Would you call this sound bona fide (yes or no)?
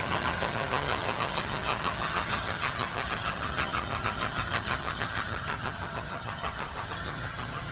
no